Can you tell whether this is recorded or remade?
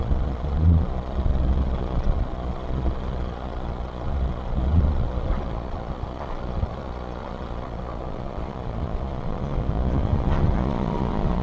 remade